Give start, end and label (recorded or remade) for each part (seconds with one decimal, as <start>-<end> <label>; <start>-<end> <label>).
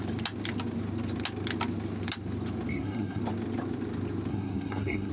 0.0-2.7 recorded; 2.7-3.2 remade; 3.2-4.3 recorded; 4.3-5.1 remade